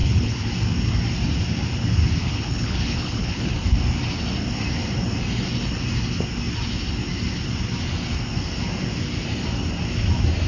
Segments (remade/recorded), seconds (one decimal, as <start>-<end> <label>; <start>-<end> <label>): 0.0-0.5 remade; 0.5-2.2 recorded; 2.2-3.5 remade; 3.5-10.5 recorded